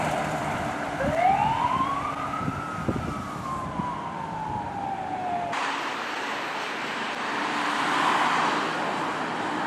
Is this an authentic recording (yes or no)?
no